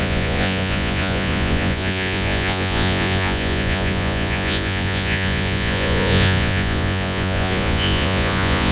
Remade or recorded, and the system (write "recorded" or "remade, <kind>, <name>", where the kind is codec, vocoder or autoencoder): remade, vocoder, Vocos